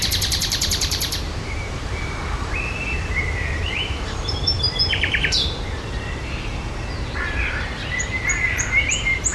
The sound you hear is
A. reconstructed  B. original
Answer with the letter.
A